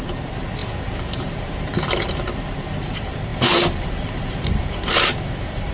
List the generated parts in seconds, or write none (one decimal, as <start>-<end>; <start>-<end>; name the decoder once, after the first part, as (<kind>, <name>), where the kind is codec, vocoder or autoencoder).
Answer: 0.0-5.7 (vocoder, BigVGAN v2)